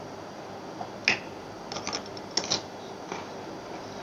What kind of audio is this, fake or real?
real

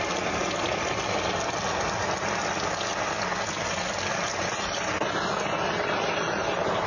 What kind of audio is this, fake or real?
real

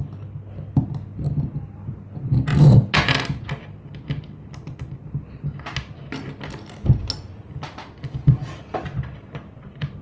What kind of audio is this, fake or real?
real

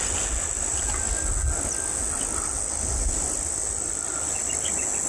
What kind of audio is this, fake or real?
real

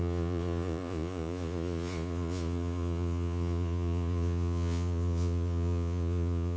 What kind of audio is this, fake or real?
fake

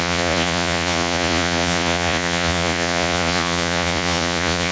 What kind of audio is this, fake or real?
fake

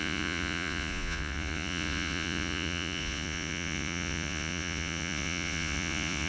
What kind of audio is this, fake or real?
fake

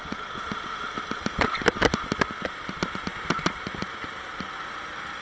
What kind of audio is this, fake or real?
real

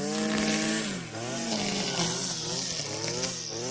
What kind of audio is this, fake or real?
real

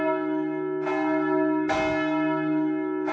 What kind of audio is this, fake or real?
real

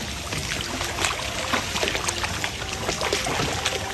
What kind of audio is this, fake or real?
real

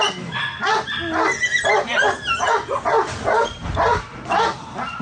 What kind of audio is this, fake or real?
real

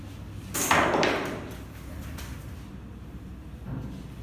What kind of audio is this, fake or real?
real